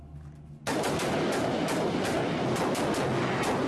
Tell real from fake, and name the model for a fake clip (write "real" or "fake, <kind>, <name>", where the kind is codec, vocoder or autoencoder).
real